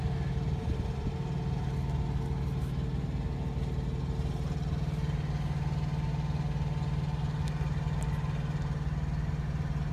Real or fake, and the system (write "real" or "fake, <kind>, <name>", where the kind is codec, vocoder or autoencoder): real